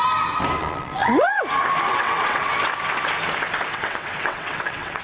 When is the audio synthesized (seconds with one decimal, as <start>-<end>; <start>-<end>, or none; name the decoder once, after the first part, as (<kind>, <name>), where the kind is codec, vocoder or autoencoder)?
0.6-1.4 (vocoder, WaveNeXt); 1.9-2.5; 3.7-5.0